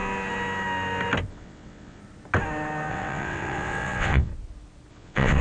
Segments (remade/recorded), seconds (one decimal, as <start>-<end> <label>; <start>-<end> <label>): 0.0-1.3 recorded; 1.3-2.0 remade; 2.0-2.9 recorded; 2.9-4.3 remade; 4.3-4.9 recorded; 4.9-5.4 remade